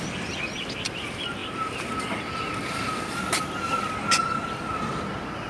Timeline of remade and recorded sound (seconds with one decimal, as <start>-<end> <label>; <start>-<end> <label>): 0.0-5.5 recorded